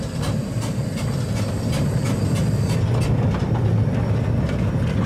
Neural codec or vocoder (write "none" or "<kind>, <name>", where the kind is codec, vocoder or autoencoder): none